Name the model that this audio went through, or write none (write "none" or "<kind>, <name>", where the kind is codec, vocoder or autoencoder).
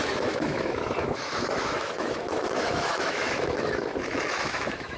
autoencoder, DAC-VAE